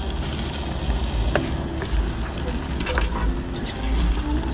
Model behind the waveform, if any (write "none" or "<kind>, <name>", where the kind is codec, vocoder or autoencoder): none